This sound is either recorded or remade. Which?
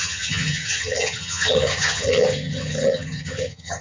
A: remade